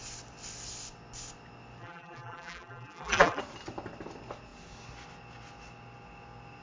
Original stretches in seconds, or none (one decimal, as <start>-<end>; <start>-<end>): 0.0-1.8; 3.4-6.6